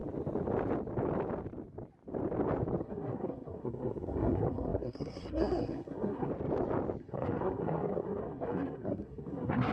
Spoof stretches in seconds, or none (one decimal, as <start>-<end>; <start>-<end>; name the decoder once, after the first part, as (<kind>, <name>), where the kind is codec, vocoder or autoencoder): 2.8-6.3 (codec, SNAC); 7.0-9.7